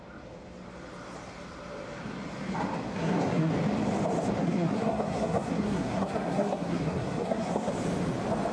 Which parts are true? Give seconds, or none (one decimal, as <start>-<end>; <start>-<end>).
0.0-2.9; 3.5-4.4; 7.7-8.5